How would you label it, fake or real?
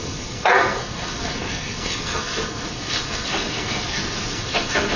fake